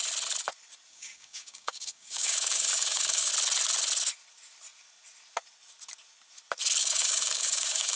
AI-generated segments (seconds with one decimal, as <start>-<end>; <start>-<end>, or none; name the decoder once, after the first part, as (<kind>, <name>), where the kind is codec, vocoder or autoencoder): 0.9-3.3 (codec, DAC); 6.8-8.0